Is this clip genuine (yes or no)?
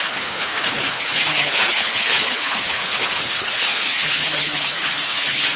no